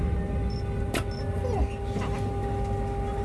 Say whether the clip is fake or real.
real